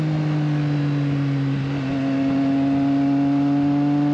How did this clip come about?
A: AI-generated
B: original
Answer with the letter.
B